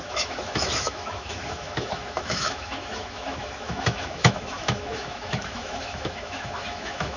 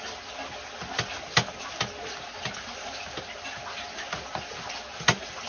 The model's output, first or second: first